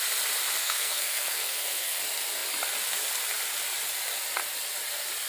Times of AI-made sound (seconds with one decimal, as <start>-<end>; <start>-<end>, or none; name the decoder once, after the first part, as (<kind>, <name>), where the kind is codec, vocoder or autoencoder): 0.6-2.0 (codec, SNAC)

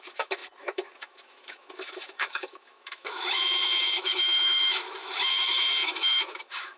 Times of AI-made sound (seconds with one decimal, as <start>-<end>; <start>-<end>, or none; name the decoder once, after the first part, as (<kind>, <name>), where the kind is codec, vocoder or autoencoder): 0.0-6.8 (autoencoder, DAC-VAE)